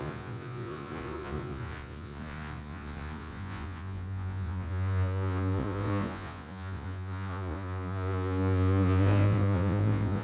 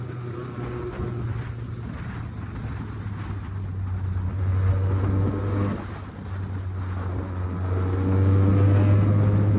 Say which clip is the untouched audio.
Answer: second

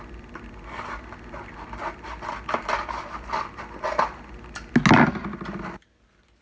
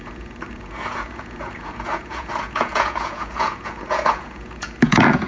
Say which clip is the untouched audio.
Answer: first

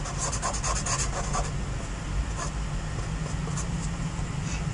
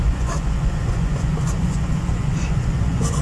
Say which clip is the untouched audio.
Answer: first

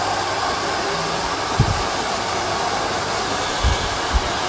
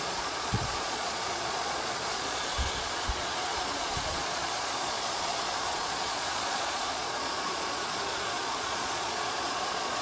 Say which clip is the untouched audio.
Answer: first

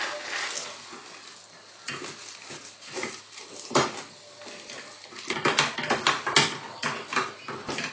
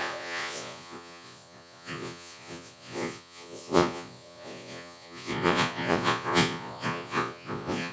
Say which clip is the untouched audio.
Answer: first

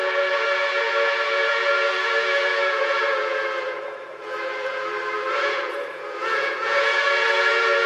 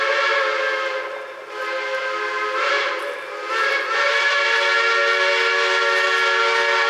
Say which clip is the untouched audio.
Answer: second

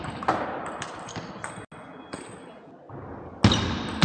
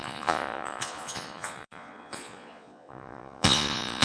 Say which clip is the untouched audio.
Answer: first